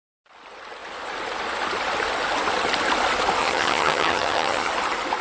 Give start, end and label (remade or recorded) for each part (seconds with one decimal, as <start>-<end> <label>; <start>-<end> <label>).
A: 0.0-3.4 recorded; 3.4-4.7 remade; 4.7-5.2 recorded